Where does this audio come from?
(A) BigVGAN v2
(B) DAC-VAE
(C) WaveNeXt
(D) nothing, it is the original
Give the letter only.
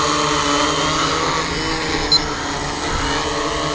D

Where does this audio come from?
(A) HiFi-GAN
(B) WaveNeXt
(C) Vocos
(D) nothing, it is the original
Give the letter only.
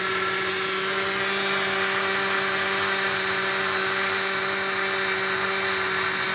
D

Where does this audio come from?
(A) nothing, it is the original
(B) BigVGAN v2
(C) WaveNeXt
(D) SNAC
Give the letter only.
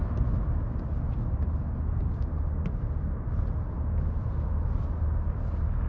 A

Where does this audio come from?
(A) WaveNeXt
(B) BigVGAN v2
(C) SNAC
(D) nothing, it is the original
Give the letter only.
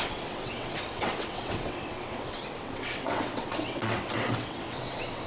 A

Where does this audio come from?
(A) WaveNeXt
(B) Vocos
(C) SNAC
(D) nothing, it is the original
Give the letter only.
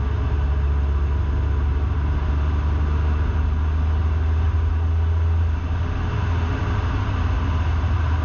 D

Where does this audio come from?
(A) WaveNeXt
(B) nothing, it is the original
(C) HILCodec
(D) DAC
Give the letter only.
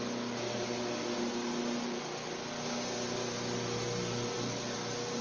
B